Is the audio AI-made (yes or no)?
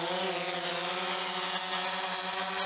no